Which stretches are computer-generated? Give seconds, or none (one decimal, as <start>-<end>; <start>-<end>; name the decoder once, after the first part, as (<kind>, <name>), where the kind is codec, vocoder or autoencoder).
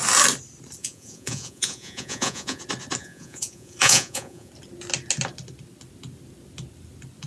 0.8-2.6 (vocoder, Vocos); 3.0-4.5